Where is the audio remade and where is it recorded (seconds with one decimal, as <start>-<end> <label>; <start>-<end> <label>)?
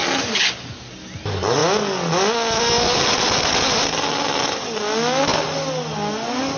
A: 0.0-6.6 recorded